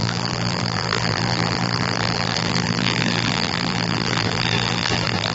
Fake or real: fake